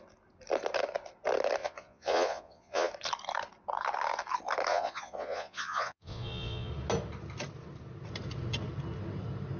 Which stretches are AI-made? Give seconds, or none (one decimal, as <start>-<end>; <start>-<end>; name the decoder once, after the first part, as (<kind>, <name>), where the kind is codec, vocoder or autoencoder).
1.6-2.9 (vocoder, Vocos); 4.7-6.7

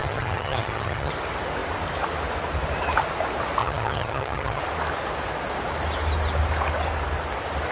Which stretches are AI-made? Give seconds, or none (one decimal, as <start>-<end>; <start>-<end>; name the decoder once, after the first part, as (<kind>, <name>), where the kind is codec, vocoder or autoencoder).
0.0-1.1 (vocoder, HiFi-GAN); 3.6-4.6